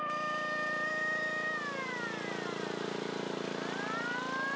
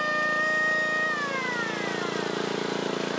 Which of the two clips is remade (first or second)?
first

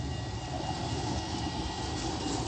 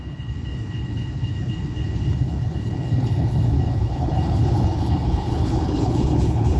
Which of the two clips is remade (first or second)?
second